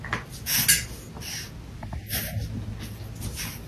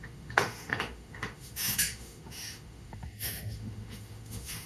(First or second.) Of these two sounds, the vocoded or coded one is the second